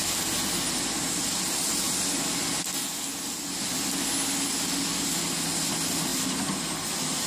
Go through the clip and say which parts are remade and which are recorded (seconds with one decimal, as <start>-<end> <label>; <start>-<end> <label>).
0.0-7.3 recorded